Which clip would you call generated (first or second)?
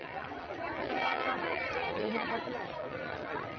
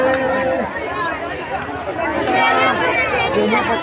first